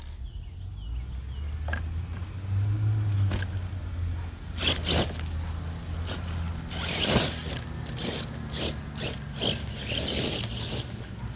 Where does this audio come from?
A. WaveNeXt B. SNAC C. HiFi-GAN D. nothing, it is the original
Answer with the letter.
D